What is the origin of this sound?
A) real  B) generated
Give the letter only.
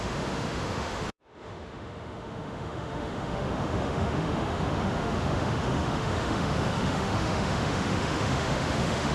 B